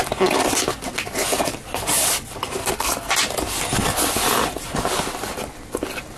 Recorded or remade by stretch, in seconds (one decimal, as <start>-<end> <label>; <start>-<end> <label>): 0.0-2.6 recorded; 2.6-3.1 remade; 3.1-6.2 recorded